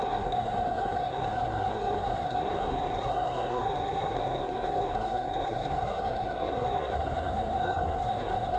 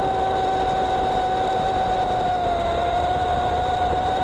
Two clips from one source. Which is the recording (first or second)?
second